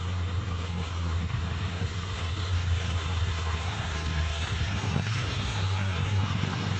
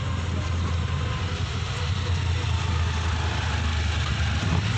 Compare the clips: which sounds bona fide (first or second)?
second